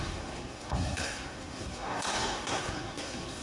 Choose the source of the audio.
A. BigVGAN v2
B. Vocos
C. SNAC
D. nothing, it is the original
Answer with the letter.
C